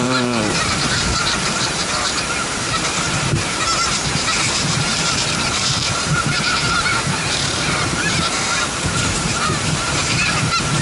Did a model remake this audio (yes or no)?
yes